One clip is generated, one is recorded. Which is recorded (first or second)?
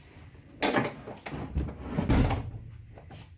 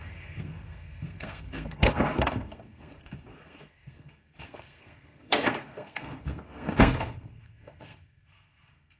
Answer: first